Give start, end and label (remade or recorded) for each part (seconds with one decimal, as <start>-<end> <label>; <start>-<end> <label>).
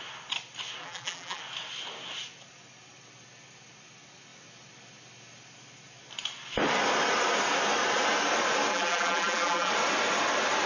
0.0-0.8 recorded; 0.8-1.4 remade; 1.4-8.7 recorded; 8.7-9.7 remade; 9.7-10.7 recorded